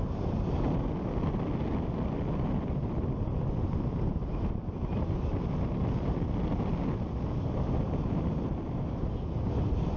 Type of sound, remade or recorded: recorded